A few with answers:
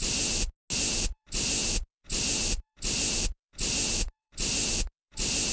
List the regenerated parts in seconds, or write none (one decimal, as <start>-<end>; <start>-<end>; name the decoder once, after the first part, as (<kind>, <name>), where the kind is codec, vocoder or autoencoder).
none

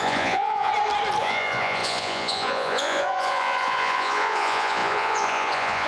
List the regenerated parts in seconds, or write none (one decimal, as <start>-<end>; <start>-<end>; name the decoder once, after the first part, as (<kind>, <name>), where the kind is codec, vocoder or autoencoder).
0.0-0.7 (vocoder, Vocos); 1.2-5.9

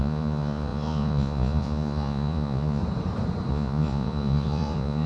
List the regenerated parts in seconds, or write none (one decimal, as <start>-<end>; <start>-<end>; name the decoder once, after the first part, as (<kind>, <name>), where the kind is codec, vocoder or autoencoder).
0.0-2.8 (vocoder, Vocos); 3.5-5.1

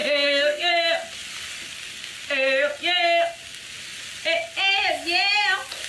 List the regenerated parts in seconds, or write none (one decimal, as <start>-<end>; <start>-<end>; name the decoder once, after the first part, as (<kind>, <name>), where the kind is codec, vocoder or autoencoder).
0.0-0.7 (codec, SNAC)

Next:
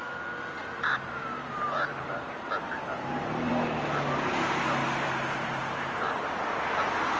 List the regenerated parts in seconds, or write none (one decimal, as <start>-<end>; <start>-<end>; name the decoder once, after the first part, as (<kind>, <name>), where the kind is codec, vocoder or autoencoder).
0.6-3.5 (vocoder, BigVGAN v2); 4.8-6.7

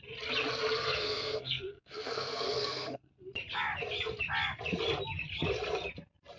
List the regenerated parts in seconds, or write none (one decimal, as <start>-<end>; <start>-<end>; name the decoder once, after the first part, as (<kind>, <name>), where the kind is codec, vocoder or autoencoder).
0.8-3.1 (codec, SNAC)

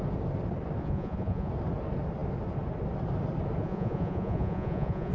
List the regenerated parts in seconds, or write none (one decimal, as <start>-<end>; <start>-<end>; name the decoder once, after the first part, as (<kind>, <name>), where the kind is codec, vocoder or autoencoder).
0.8-1.5 (vocoder, Vocos); 3.6-5.1